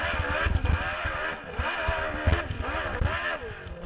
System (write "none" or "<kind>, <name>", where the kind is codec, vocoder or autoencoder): none